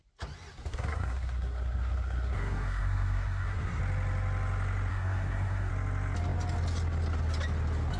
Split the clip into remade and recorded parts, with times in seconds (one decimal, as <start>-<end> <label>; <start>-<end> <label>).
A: 0.0-0.7 recorded; 0.7-3.8 remade; 3.8-4.9 recorded; 4.9-5.7 remade; 5.7-8.0 recorded